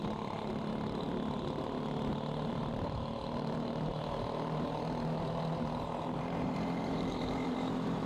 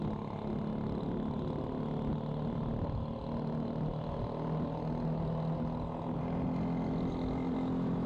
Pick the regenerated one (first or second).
first